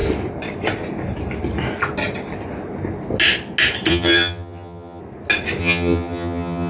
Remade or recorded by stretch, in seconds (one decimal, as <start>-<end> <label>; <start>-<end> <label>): 0.0-3.9 recorded; 3.9-5.0 remade; 5.0-5.6 recorded; 5.6-6.7 remade